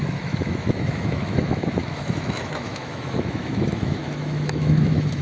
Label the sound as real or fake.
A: fake